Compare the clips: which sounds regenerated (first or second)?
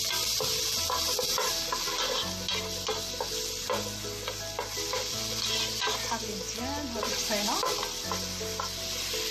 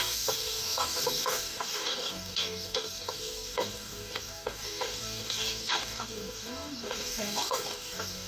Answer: second